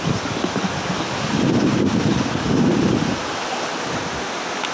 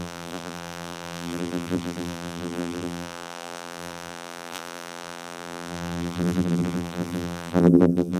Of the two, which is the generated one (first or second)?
second